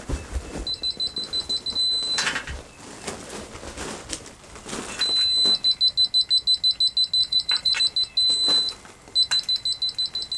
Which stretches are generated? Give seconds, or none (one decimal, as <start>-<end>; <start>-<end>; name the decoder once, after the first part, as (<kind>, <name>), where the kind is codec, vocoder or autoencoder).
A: 7.2-7.8 (vocoder, BigVGAN v2)